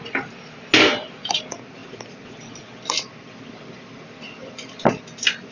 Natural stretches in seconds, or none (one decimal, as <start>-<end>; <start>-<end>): 0.0-5.5